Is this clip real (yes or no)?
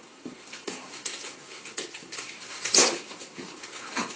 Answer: no